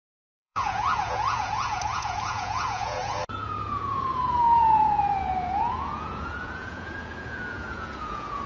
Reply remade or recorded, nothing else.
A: remade